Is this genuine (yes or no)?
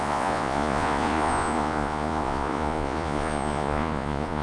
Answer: no